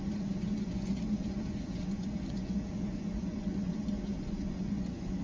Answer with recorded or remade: remade